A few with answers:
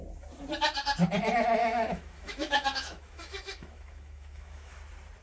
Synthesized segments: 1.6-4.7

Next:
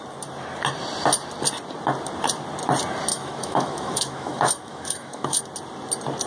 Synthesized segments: 3.1-5.4

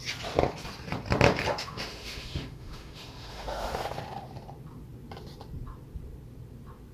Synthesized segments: 1.6-3.8